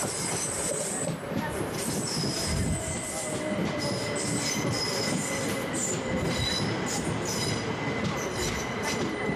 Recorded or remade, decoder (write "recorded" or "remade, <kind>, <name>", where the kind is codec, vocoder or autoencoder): remade, vocoder, BigVGAN v2